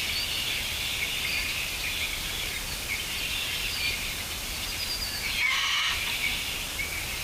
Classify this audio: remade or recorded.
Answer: recorded